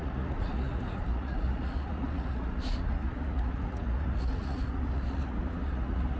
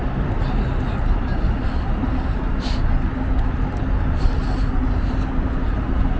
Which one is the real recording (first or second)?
second